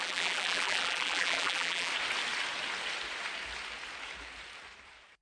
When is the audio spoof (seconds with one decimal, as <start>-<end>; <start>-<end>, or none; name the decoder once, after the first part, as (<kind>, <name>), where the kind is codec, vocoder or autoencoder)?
0.0-1.9 (vocoder, BigVGAN v2)